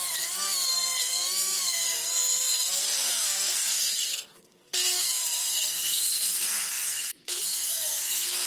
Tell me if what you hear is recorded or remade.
remade